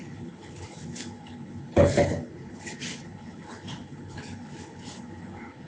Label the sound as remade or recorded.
remade